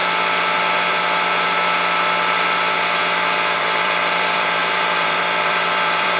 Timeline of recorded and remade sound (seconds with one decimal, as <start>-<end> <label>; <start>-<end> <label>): 0.0-3.6 recorded; 3.6-6.2 remade